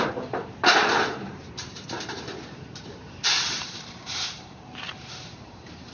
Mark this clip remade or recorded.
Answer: remade